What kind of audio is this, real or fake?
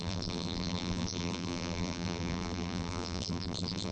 fake